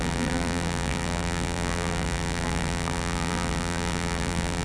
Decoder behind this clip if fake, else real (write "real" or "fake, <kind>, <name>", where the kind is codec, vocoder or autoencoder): fake, vocoder, BigVGAN v2